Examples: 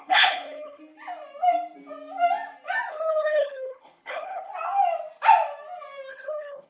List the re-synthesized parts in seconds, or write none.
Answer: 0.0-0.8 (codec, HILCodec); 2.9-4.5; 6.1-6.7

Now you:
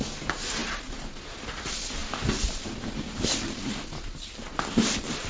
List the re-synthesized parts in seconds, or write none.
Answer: none

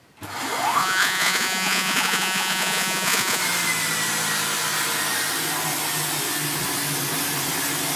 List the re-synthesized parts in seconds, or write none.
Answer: 0.8-3.4 (vocoder, Vocos)

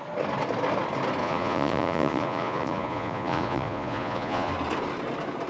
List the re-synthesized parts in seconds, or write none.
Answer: 1.2-4.5 (vocoder, Vocos)

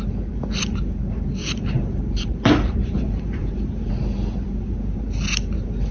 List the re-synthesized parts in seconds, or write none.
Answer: 1.4-3.9 (vocoder, BigVGAN v2)